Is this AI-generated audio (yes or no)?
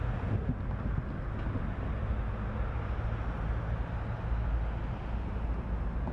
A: no